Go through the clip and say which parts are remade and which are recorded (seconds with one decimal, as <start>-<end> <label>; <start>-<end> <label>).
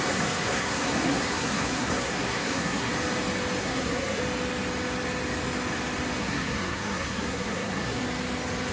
0.0-2.9 remade; 2.9-3.6 recorded; 3.6-4.2 remade; 4.2-6.2 recorded; 6.2-8.0 remade; 8.0-8.7 recorded